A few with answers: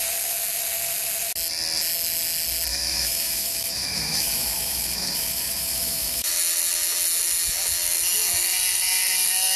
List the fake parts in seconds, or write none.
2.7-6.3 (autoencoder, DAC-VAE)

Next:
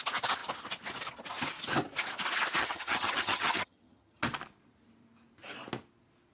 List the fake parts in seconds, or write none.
2.6-4.2 (vocoder, HiFi-GAN)

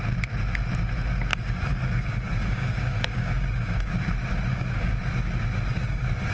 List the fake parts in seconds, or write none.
1.3-3.9 (codec, DAC); 4.5-5.0; 5.7-6.3

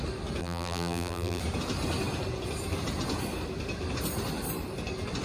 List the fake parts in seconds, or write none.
0.4-1.4 (vocoder, BigVGAN v2)

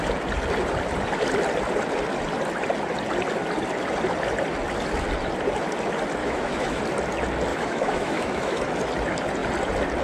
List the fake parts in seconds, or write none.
6.2-6.8 (autoencoder, DAC-VAE); 7.5-8.6

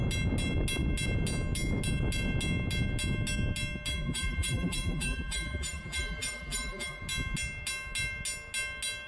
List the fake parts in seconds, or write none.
3.9-7.0 (vocoder, BigVGAN v2)

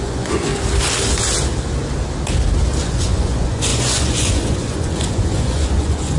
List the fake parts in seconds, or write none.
0.0-0.5 (vocoder, Vocos); 2.8-6.2

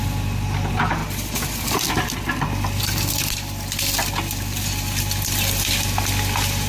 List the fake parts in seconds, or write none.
none